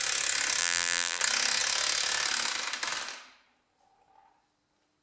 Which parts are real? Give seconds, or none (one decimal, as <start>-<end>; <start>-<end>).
0.0-0.6; 1.2-5.0

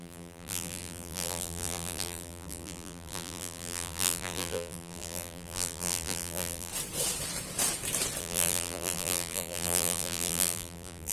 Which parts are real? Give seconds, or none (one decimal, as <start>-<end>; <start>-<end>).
6.7-8.2

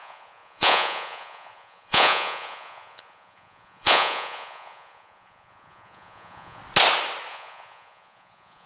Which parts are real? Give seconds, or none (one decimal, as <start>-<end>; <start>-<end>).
6.6-7.3

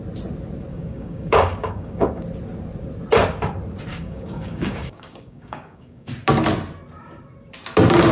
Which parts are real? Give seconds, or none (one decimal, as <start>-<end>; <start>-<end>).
0.0-0.7; 2.2-3.9; 6.1-8.1

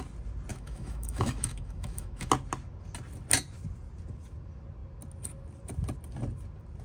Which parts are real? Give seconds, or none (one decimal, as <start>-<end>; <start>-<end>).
0.0-0.5; 2.3-6.8

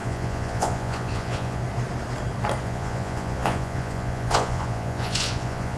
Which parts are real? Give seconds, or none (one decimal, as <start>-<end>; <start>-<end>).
1.6-2.6

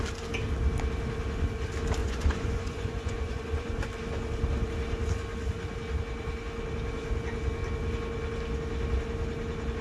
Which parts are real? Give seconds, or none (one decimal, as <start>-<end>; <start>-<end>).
0.0-2.0; 3.8-9.8